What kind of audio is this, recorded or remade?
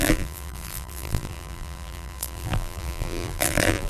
remade